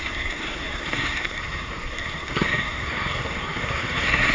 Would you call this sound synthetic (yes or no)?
yes